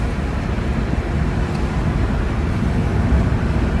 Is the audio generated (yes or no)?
no